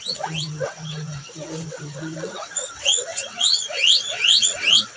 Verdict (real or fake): fake